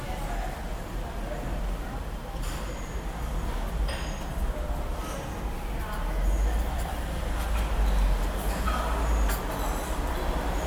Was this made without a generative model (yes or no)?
yes